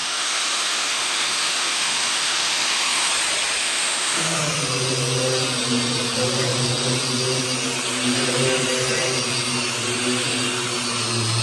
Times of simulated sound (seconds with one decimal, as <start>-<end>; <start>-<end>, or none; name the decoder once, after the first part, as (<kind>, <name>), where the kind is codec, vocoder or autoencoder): 0.0-3.1 (autoencoder, DAC-VAE); 3.6-4.4